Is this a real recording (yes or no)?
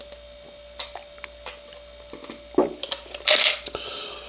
yes